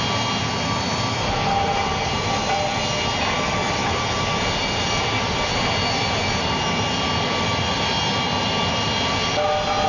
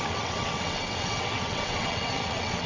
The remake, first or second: second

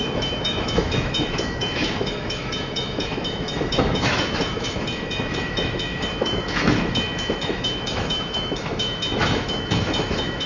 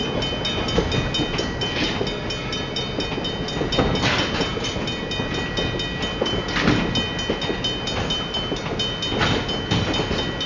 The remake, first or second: first